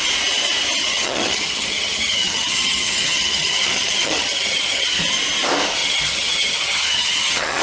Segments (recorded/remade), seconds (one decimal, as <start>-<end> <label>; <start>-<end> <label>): 0.0-0.8 recorded; 0.8-5.0 remade; 5.0-5.8 recorded; 5.8-7.6 remade